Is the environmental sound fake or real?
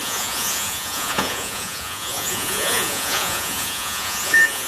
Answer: fake